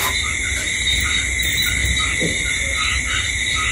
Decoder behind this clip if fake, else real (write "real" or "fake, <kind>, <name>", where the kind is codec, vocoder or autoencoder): real